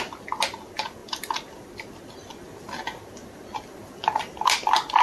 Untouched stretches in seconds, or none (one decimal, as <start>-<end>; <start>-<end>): 0.0-5.0